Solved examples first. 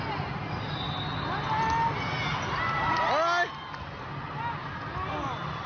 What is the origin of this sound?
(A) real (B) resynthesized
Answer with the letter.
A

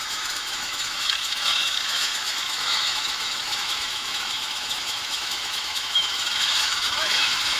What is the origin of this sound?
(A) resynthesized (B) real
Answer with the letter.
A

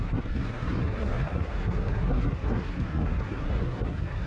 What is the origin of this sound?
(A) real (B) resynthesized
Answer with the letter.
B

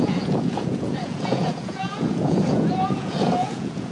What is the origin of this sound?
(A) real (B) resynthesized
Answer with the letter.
B